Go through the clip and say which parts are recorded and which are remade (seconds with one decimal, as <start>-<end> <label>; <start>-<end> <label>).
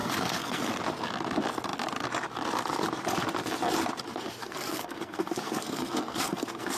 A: 0.0-0.7 remade; 0.7-4.4 recorded; 4.4-6.8 remade